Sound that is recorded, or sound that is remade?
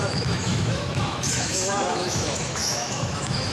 remade